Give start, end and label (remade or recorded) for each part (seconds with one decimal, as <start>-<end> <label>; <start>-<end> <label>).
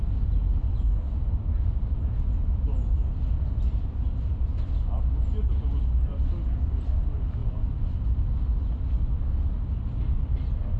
0.0-10.8 recorded